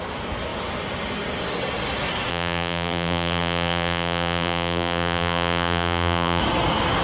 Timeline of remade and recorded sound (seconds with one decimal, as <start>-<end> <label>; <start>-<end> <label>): 0.0-2.3 recorded; 2.3-6.4 remade; 6.4-7.0 recorded